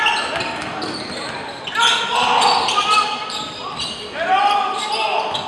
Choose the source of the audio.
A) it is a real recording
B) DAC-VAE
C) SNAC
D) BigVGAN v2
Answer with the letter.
A